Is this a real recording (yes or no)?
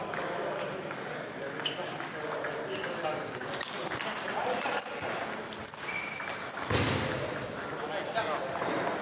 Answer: yes